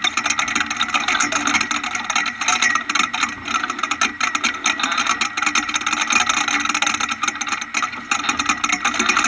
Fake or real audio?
real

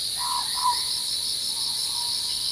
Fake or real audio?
real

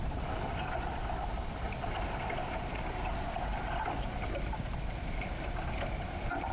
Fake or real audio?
real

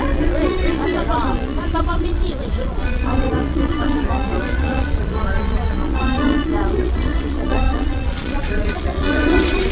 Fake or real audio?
fake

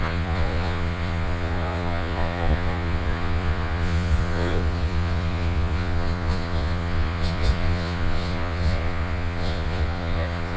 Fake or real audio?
fake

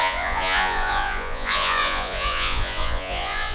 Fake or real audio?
fake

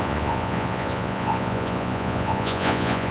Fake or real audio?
fake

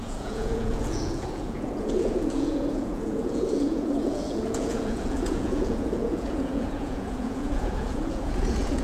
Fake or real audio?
fake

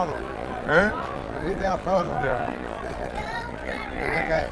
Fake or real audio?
fake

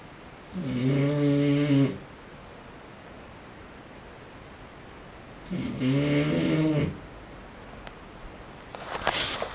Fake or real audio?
real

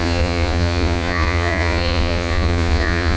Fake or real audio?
fake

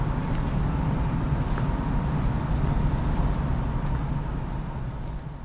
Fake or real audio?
real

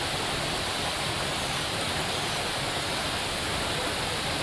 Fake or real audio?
real